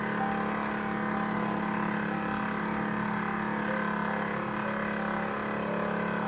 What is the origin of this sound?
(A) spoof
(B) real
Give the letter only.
B